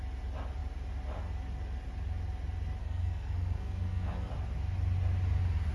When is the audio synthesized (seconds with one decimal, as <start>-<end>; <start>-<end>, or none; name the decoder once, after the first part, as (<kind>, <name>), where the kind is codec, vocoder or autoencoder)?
2.8-4.3 (codec, SNAC)